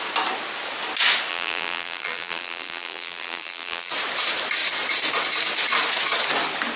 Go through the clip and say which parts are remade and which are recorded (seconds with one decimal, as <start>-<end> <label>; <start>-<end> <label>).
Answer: 0.0-1.3 recorded; 1.3-3.9 remade; 3.9-6.8 recorded